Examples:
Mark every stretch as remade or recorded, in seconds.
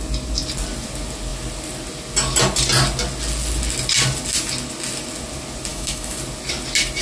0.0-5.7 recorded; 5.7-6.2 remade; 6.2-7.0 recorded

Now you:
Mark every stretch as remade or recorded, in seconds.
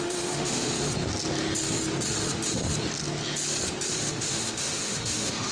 0.0-0.7 remade; 0.7-4.0 recorded; 4.0-5.5 remade